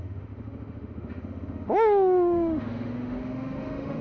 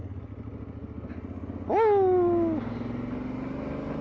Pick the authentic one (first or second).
second